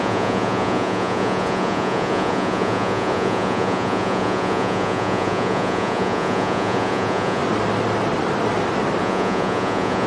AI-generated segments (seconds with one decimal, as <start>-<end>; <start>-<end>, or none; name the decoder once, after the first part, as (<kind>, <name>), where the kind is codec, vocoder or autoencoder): 0.0-7.4 (vocoder, Vocos); 9.0-10.1